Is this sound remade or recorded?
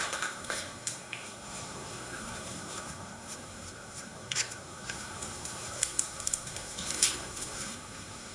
remade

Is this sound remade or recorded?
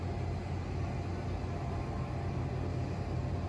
recorded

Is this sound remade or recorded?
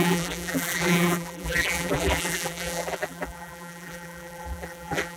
remade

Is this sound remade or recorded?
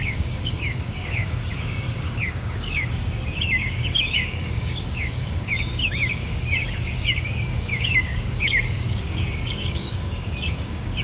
remade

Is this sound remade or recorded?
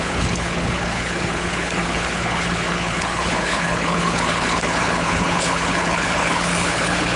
remade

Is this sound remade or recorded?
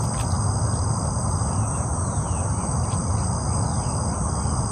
recorded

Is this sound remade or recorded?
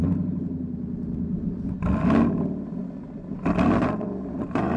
recorded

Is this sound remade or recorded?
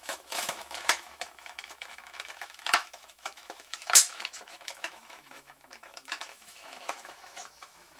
remade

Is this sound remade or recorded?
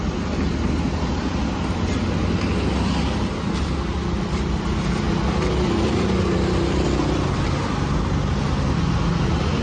recorded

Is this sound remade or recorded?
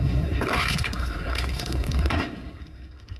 remade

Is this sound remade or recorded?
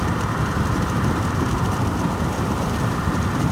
remade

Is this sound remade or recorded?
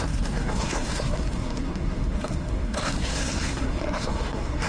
remade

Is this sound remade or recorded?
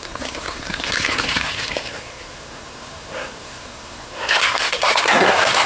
remade